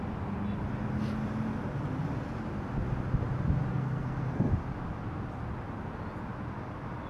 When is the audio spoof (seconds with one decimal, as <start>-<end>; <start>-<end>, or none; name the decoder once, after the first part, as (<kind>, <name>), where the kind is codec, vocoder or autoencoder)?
3.7-4.5 (codec, SNAC)